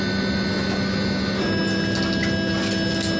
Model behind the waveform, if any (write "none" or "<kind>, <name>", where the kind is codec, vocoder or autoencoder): none